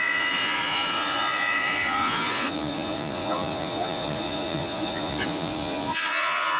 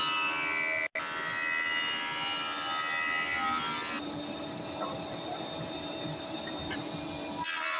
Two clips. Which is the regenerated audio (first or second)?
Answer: first